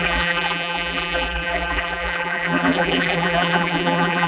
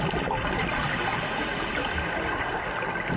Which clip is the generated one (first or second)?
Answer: first